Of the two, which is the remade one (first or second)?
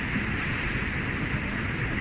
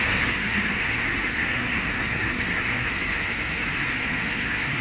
second